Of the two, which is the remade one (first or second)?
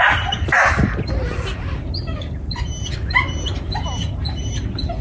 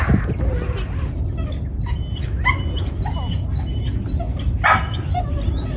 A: first